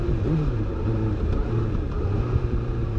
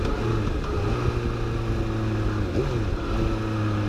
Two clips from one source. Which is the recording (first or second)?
second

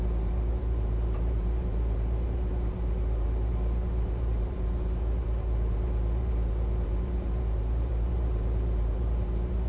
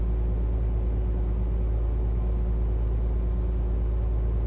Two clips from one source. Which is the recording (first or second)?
second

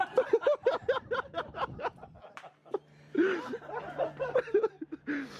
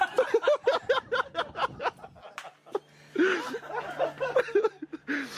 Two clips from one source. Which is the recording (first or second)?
second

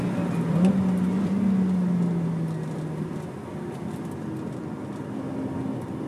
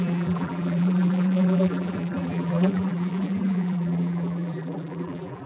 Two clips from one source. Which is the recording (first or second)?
first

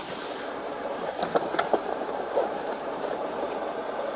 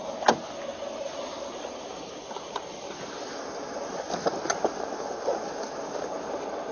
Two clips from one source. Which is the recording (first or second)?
second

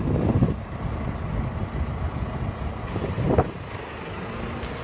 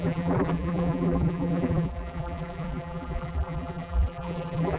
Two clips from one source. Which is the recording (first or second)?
first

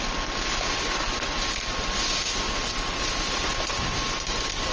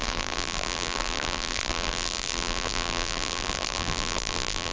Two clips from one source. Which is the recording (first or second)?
first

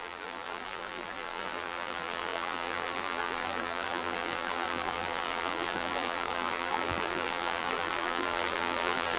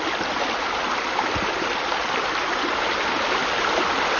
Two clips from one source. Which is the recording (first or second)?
second